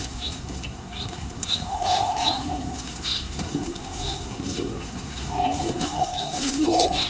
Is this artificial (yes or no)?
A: yes